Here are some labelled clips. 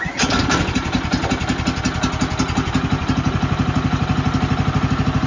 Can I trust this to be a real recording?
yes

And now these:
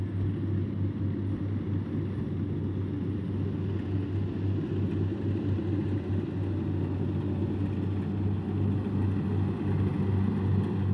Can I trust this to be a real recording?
yes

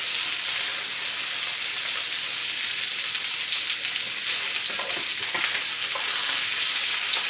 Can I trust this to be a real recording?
yes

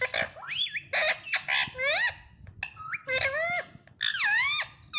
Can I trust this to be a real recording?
yes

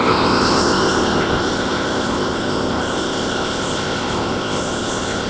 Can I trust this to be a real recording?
no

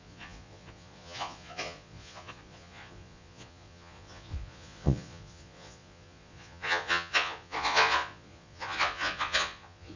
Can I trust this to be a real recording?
no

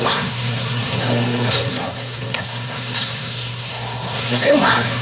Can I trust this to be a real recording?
no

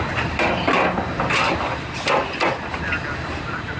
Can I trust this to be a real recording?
yes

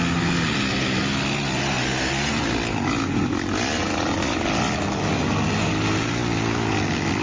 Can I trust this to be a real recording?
yes